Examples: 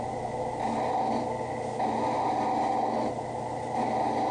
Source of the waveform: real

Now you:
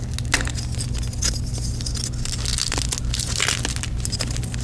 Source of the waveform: real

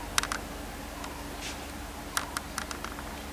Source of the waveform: real